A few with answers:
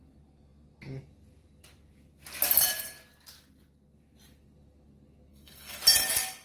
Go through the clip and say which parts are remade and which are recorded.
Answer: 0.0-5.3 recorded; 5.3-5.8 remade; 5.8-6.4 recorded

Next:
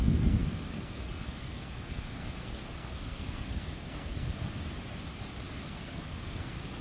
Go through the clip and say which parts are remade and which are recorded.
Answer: 0.0-4.6 remade; 4.6-5.6 recorded; 5.6-6.8 remade

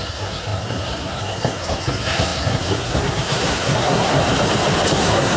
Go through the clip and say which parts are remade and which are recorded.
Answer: 0.0-4.2 remade; 4.2-4.9 recorded; 4.9-5.4 remade

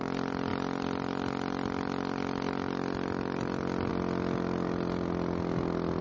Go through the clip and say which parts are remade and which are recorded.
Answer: 0.0-6.0 recorded

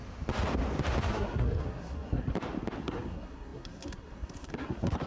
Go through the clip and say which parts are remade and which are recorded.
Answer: 0.0-1.1 recorded; 1.1-2.3 remade; 2.3-2.8 recorded; 2.8-5.1 remade

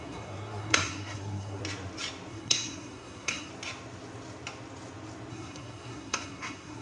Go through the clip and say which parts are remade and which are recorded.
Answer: 0.0-1.6 remade; 1.6-2.3 recorded; 2.3-3.5 remade; 3.5-5.3 recorded; 5.3-6.8 remade

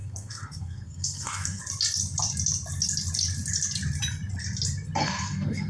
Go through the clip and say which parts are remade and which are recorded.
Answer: 0.0-1.6 remade; 1.6-5.0 recorded; 5.0-5.7 remade

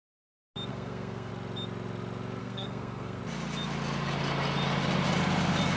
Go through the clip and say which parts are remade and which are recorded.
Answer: 0.0-0.7 recorded; 0.7-1.3 remade; 1.3-2.4 recorded; 2.4-3.2 remade; 3.2-5.8 recorded